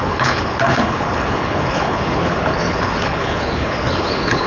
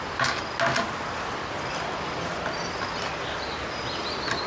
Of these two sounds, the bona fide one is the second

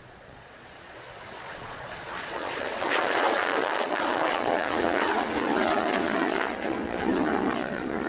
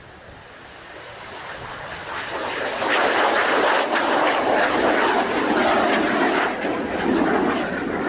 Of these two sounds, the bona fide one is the second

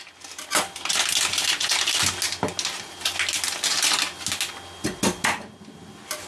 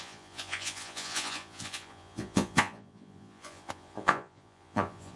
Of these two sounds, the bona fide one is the first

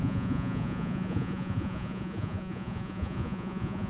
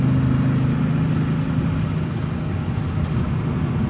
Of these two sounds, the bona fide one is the second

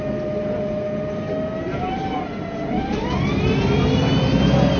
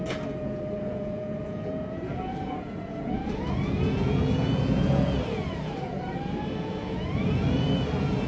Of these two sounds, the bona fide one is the first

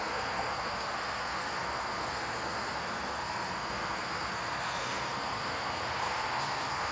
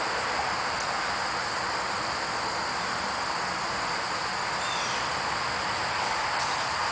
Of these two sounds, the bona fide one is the second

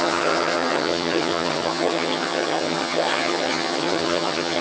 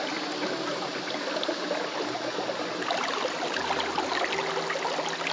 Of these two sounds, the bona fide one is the second